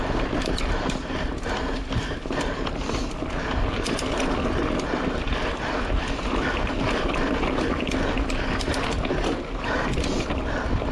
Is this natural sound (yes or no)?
yes